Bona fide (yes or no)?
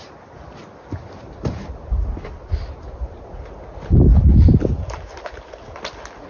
yes